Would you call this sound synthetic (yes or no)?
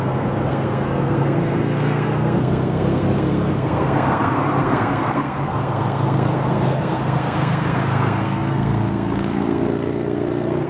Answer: yes